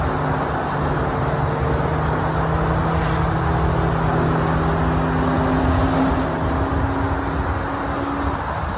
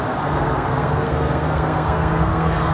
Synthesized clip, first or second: second